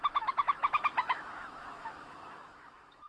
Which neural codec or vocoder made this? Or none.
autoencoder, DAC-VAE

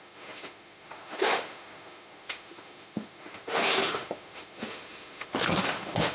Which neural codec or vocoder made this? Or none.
autoencoder, DAC-VAE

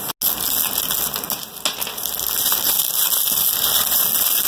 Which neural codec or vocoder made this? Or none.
none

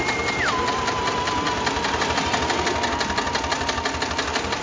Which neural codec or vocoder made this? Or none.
none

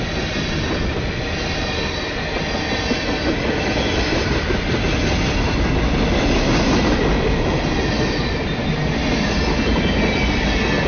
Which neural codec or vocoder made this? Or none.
none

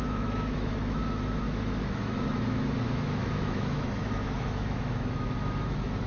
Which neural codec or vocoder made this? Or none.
autoencoder, DAC-VAE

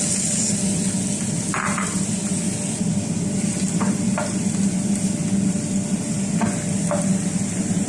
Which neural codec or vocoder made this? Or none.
none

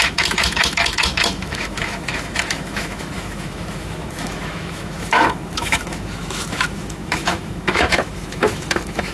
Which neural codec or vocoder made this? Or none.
autoencoder, DAC-VAE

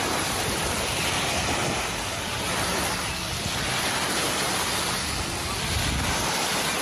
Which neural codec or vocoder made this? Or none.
none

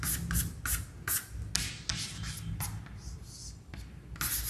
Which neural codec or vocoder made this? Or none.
none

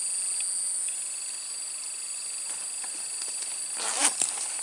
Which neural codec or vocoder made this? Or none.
none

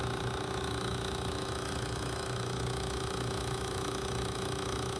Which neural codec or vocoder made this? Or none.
autoencoder, DAC-VAE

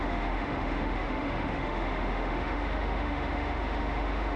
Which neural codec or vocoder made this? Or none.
autoencoder, DAC-VAE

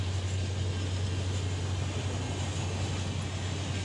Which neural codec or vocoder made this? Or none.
none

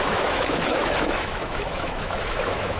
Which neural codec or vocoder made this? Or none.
autoencoder, DAC-VAE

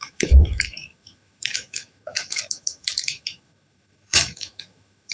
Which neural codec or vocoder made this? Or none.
autoencoder, DAC-VAE